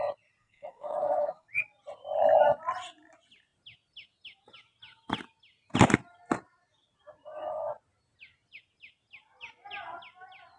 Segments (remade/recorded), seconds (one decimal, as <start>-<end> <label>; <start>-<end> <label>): 0.0-0.4 recorded; 0.4-1.5 remade; 1.5-10.6 recorded